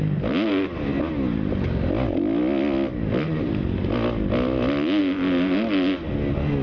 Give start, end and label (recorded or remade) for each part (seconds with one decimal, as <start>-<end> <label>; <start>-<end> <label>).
0.0-6.6 recorded